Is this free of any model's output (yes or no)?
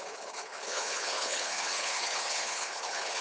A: no